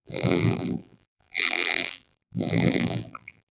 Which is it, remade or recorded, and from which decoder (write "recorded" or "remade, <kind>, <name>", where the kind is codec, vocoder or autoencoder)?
remade, vocoder, BigVGAN v2